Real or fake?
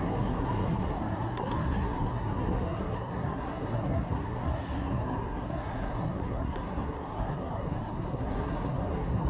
fake